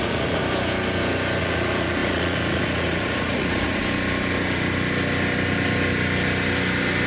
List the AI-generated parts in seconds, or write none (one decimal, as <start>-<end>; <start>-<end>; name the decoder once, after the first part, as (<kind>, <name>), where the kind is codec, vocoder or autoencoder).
0.0-0.4 (vocoder, Vocos); 1.4-3.8